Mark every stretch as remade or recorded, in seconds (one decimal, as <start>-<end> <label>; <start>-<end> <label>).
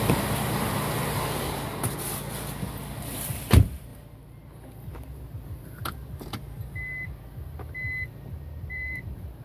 0.0-1.7 remade; 1.7-3.0 recorded; 3.0-3.9 remade; 3.9-8.7 recorded; 8.7-9.4 remade